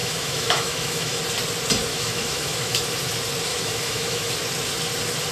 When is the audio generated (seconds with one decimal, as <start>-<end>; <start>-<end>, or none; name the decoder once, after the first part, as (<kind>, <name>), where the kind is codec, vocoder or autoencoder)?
0.0-1.2 (autoencoder, DAC-VAE); 1.9-2.8; 3.5-4.3